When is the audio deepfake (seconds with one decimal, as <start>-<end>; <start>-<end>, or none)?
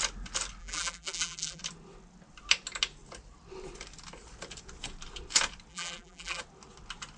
0.6-1.6; 5.7-6.4